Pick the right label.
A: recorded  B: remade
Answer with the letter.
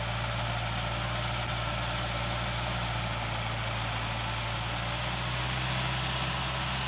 A